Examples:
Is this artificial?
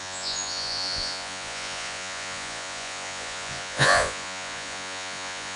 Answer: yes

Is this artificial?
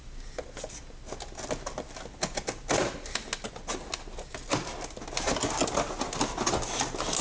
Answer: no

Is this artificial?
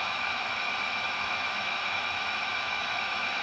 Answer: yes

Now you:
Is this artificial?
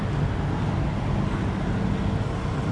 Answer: no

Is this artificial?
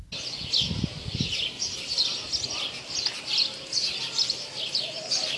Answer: no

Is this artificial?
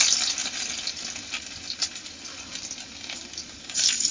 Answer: no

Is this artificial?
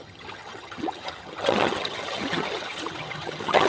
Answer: yes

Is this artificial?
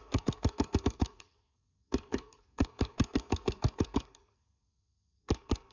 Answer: yes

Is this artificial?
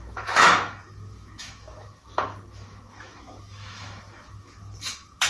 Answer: yes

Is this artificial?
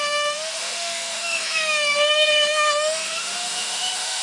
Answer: yes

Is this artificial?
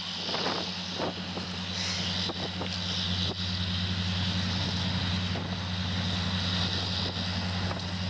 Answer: no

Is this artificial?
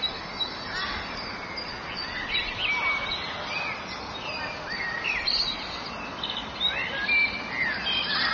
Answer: no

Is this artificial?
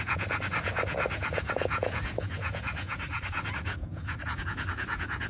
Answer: yes